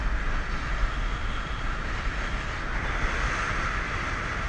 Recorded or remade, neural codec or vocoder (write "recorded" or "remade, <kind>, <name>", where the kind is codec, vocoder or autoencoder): recorded